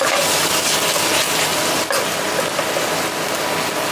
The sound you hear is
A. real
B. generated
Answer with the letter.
A